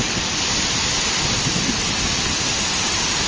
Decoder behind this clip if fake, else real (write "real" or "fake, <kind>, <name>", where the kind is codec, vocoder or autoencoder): real